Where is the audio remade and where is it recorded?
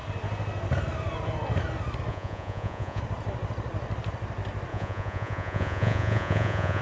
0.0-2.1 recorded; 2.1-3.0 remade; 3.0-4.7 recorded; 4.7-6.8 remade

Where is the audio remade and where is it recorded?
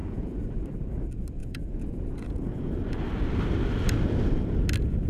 0.0-0.6 remade; 0.6-1.4 recorded; 1.4-2.7 remade; 2.7-5.1 recorded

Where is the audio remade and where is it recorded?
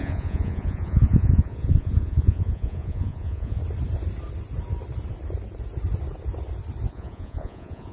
0.0-3.6 remade; 3.6-6.9 recorded; 6.9-7.9 remade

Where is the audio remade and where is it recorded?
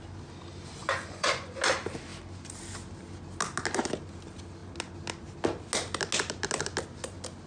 0.0-0.8 recorded; 0.8-1.6 remade; 1.6-7.5 recorded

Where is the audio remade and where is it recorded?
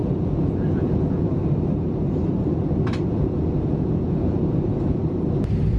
0.0-1.4 remade; 1.4-3.1 recorded; 3.1-5.0 remade; 5.0-5.8 recorded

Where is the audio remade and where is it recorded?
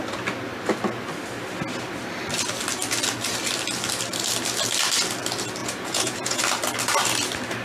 0.0-5.6 recorded; 5.6-6.4 remade; 6.4-7.6 recorded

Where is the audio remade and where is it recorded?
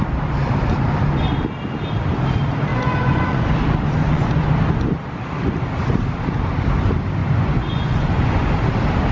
0.0-2.7 recorded; 2.7-3.4 remade; 3.4-4.0 recorded; 4.0-4.5 remade; 4.5-7.2 recorded; 7.2-8.5 remade; 8.5-9.1 recorded